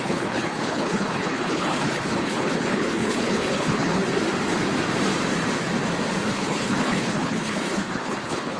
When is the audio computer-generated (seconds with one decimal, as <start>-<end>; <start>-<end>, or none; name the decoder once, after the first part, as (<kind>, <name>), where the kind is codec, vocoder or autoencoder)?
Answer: 0.0-4.0 (codec, HILCodec); 6.3-8.6